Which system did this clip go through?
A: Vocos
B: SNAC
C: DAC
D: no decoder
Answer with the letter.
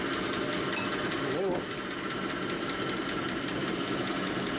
D